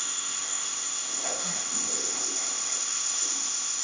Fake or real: fake